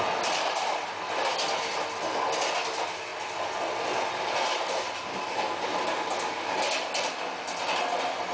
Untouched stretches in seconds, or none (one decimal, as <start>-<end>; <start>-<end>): 0.0-8.3